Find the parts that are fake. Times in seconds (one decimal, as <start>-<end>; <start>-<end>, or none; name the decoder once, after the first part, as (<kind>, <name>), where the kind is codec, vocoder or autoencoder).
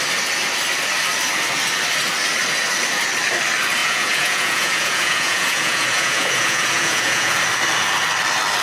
3.8-7.4 (vocoder, Vocos)